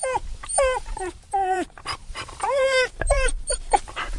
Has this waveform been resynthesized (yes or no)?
yes